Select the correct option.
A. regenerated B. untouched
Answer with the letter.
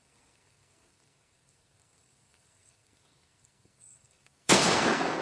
A